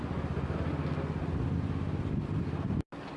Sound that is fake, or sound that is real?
real